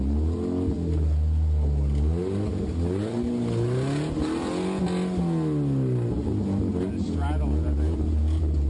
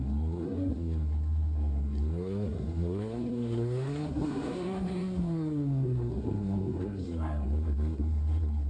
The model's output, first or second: second